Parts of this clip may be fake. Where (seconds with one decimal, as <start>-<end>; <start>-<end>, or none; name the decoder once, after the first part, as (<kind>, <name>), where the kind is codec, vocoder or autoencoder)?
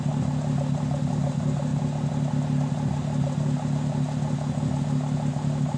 none